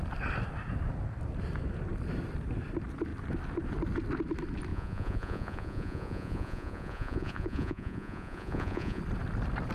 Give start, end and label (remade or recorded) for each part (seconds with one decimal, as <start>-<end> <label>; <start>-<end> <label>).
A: 0.0-4.7 recorded; 4.7-9.0 remade; 9.0-9.7 recorded